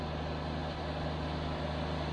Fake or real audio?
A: real